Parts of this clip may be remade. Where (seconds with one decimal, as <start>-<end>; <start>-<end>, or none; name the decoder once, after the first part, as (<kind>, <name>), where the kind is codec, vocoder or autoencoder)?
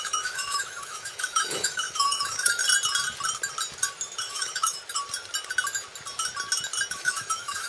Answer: 0.0-2.6 (autoencoder, DAC-VAE); 4.2-4.8; 6.9-7.7